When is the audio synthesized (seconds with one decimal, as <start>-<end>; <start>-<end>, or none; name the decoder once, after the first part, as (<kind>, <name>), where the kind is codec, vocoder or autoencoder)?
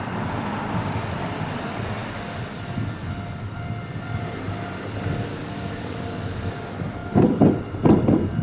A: 5.3-6.5 (codec, DAC)